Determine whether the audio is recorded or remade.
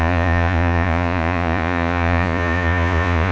remade